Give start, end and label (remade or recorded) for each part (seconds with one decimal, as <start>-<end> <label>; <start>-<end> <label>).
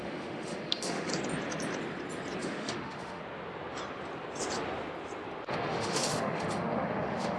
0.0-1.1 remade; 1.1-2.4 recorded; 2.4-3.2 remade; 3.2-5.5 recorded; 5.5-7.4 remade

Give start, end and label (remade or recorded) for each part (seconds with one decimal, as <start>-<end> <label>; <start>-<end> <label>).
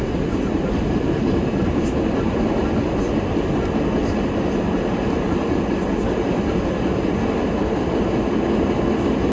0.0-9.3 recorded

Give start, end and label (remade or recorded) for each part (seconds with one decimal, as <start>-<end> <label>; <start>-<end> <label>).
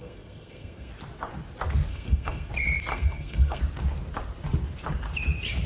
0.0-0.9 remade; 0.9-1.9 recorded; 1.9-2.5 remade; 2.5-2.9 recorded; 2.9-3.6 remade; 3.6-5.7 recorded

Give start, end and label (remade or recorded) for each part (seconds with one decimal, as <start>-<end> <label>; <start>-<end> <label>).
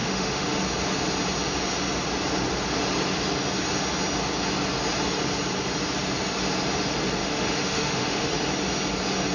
0.0-0.6 remade; 0.6-7.2 recorded; 7.2-8.3 remade; 8.3-9.3 recorded